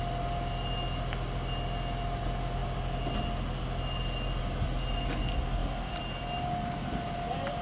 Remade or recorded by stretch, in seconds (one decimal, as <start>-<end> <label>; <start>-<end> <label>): 0.0-7.6 recorded